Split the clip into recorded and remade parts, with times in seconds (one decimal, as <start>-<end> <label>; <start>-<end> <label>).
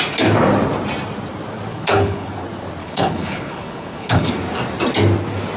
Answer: 0.0-1.7 recorded; 1.7-2.3 remade; 2.3-2.8 recorded; 2.8-4.3 remade; 4.3-5.6 recorded